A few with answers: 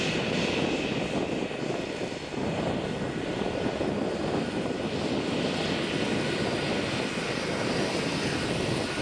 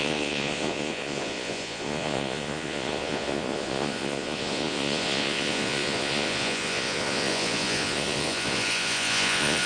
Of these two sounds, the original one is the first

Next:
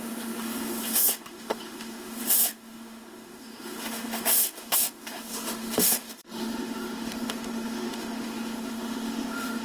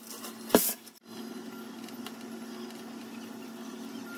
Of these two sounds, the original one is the second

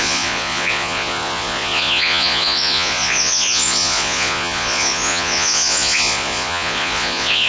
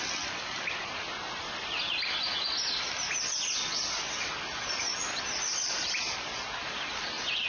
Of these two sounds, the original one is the second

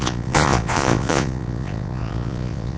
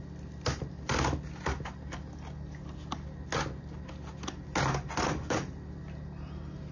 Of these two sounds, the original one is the second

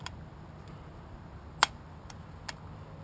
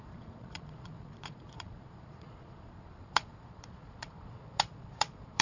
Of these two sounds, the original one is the first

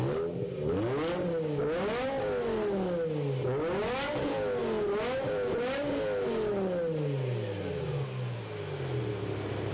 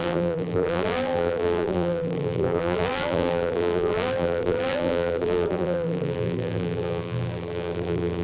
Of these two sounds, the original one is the first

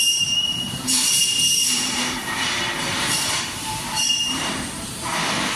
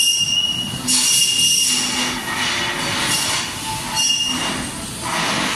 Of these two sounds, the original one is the second